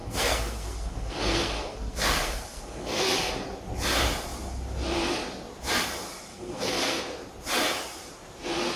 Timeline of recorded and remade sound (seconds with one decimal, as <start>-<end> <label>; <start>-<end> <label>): 0.0-3.3 remade; 3.3-6.3 recorded; 6.3-7.0 remade; 7.0-8.8 recorded